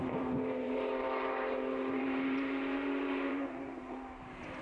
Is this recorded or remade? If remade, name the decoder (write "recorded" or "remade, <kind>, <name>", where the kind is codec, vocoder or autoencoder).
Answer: remade, vocoder, BigVGAN v2